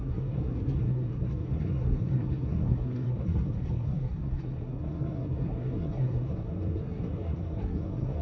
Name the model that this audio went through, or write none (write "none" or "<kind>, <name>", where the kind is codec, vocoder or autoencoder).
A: codec, SNAC